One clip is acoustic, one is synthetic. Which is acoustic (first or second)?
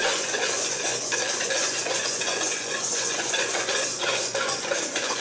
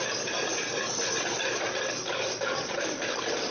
second